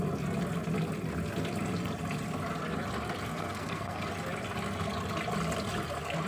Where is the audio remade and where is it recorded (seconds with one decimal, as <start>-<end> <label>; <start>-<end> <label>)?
0.0-3.3 recorded; 3.3-4.1 remade; 4.1-6.3 recorded

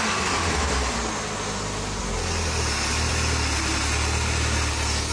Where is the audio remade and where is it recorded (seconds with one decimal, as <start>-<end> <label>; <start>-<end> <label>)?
0.0-5.1 recorded

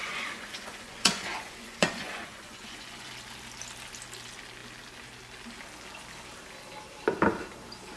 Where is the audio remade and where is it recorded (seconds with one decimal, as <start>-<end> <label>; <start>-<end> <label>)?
0.0-3.1 remade; 3.1-8.0 recorded

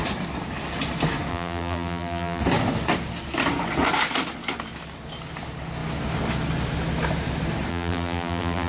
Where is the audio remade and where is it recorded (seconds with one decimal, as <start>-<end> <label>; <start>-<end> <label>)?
0.0-1.3 recorded; 1.3-2.4 remade; 2.4-7.7 recorded; 7.7-8.7 remade

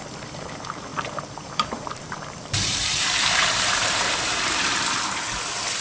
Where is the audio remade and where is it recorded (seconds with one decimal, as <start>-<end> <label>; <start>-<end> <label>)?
0.0-0.9 recorded; 0.9-4.4 remade; 4.4-5.8 recorded

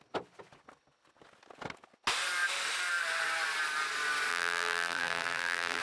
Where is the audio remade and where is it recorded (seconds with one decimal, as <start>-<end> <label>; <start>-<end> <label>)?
0.0-4.3 recorded; 4.3-5.8 remade